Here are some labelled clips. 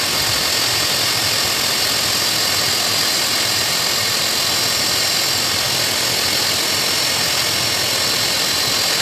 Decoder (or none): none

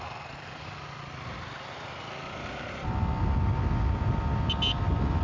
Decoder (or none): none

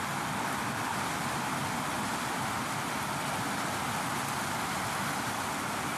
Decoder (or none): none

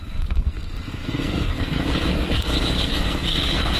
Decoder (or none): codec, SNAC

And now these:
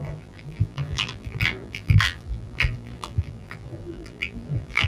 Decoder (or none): vocoder, BigVGAN v2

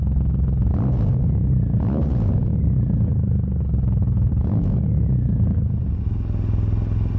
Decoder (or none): none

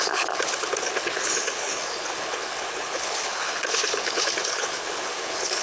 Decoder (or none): codec, HILCodec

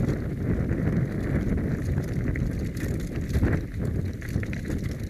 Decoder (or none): none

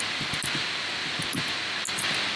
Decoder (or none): none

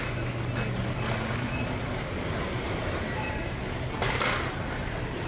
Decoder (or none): none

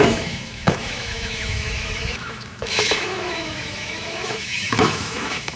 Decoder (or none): autoencoder, DAC-VAE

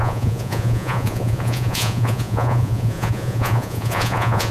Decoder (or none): vocoder, Vocos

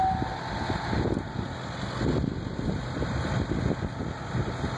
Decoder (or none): none